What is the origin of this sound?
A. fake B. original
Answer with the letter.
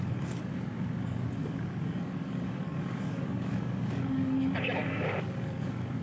A